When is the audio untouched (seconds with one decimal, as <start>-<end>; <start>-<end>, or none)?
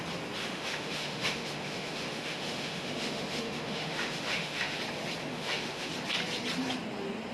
0.0-0.4; 4.8-5.2; 5.9-7.3